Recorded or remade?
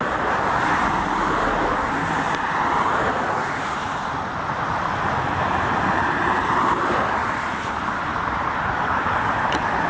recorded